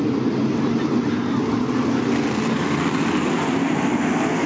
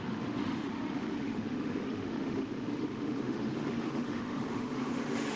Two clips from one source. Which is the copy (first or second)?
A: second